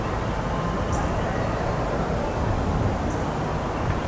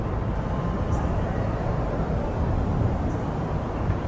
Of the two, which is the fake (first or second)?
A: second